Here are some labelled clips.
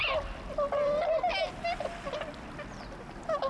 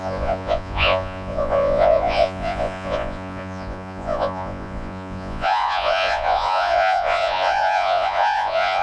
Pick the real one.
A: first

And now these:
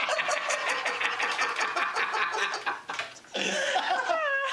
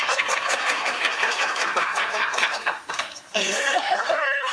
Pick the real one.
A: first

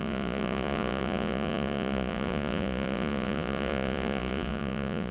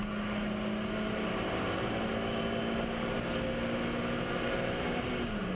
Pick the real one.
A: second